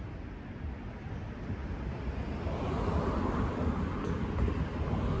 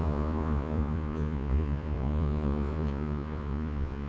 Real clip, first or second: first